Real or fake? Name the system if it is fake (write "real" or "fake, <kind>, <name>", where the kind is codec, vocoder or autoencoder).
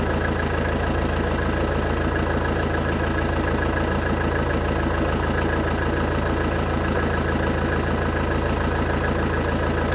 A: real